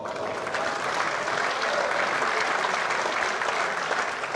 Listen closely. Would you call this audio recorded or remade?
recorded